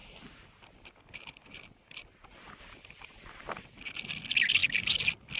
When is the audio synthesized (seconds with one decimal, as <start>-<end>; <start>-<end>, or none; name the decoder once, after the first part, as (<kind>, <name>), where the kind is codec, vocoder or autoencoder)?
none